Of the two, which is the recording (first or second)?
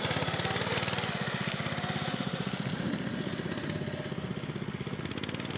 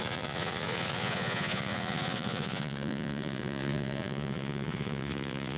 first